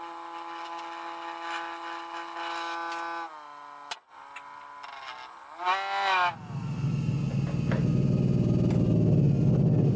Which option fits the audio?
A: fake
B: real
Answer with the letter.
B